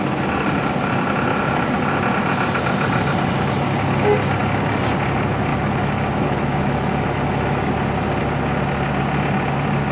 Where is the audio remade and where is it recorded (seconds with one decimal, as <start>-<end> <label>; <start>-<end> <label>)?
0.0-5.5 recorded; 5.5-7.7 remade; 7.7-9.9 recorded